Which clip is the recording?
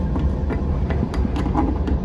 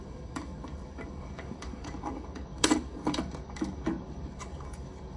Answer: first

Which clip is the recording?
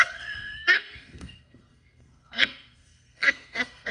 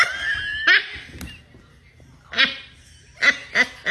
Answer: second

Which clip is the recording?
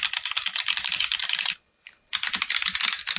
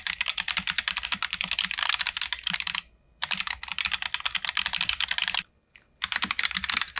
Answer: second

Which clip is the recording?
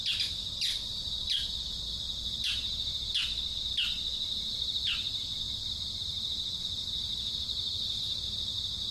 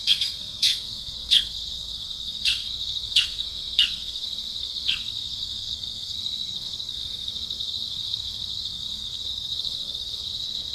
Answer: first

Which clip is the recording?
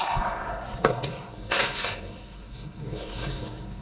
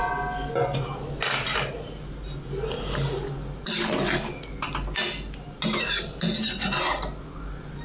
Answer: second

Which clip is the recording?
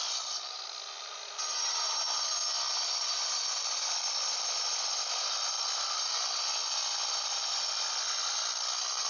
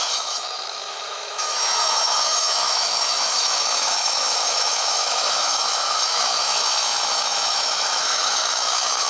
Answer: first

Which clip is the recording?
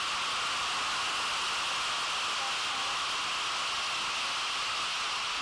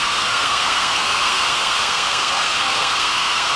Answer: first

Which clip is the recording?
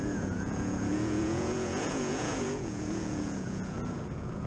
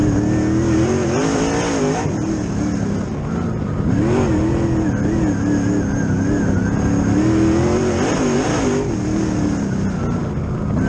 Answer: second